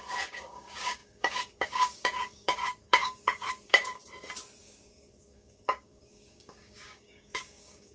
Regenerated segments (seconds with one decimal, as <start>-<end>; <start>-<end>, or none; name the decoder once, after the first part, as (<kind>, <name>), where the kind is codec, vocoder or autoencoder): 0.0-4.0 (codec, DAC); 4.6-7.9